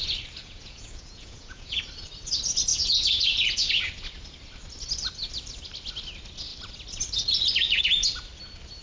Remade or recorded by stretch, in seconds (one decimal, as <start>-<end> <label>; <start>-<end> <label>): 0.0-0.4 recorded; 0.4-1.8 remade; 1.8-2.7 recorded; 2.7-3.7 remade; 3.7-8.8 recorded